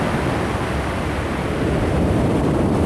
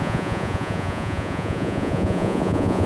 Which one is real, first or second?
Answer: first